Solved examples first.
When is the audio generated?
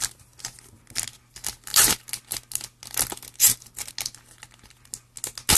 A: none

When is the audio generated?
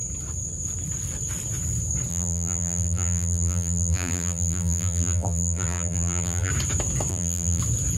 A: 2.1-6.5; 7.1-7.6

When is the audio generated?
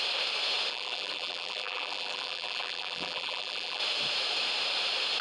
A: 0.7-3.8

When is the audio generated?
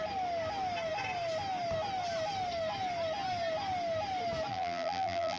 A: 4.5-5.4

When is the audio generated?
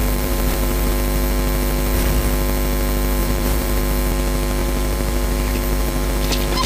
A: 0.0-0.9; 3.2-3.8; 4.6-6.1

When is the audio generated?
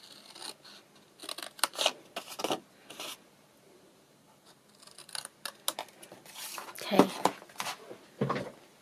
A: none